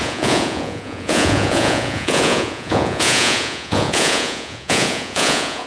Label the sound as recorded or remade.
remade